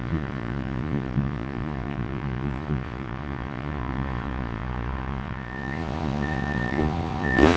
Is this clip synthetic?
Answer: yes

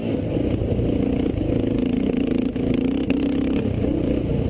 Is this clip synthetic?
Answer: no